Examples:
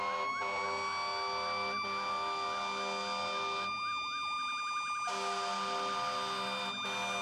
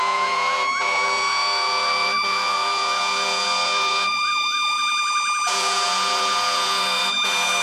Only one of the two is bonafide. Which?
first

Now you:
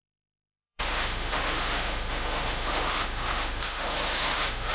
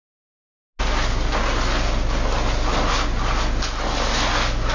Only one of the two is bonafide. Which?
second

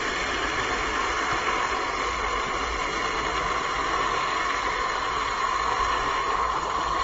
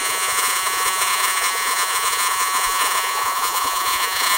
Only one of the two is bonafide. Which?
first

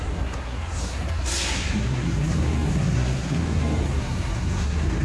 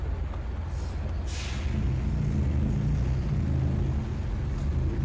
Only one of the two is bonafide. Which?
second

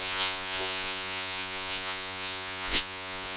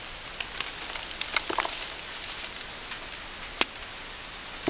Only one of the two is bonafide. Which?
second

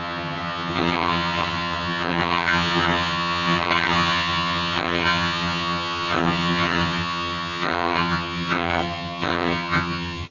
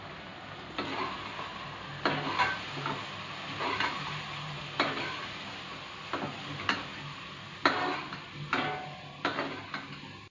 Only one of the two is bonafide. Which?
second